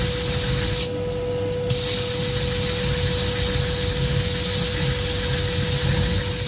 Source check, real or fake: real